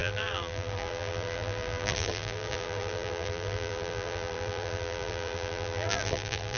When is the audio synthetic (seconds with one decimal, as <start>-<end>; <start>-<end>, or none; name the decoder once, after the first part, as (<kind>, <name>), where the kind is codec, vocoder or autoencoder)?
0.0-6.6 (vocoder, BigVGAN v2)